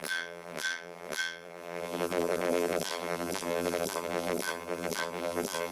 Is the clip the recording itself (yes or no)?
no